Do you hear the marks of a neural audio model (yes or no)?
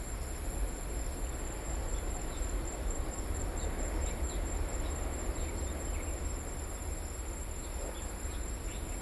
no